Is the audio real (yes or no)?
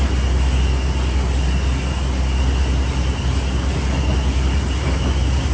yes